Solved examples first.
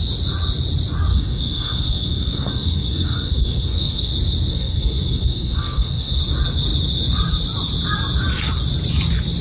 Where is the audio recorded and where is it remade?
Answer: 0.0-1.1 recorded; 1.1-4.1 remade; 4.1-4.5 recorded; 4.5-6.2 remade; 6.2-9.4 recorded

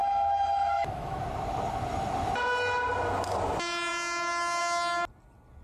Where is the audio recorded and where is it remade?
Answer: 0.0-1.2 remade; 1.2-5.6 recorded

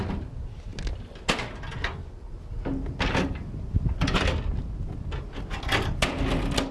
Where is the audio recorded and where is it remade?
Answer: 0.0-6.7 recorded

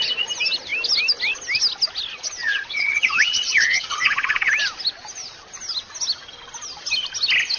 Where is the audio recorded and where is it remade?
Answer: 0.0-2.4 recorded; 2.4-4.5 remade; 4.5-7.6 recorded

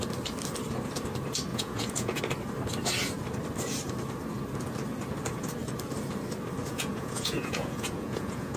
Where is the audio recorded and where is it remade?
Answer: 0.0-1.5 recorded; 1.5-2.2 remade; 2.2-6.6 recorded; 6.6-8.6 remade